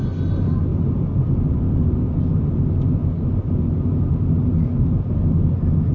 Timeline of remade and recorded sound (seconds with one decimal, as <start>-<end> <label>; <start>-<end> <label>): 0.0-0.7 recorded; 0.7-2.2 remade; 2.2-3.0 recorded; 3.0-4.5 remade; 4.5-5.9 recorded